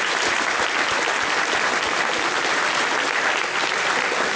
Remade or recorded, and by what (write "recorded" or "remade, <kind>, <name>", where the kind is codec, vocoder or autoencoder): recorded